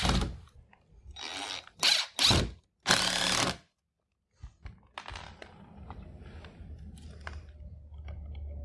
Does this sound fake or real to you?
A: real